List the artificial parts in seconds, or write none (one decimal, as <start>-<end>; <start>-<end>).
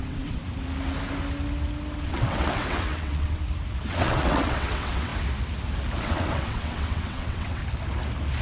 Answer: 0.0-0.4; 2.0-3.4; 3.9-5.1; 6.0-7.6